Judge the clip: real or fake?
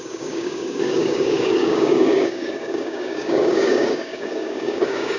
fake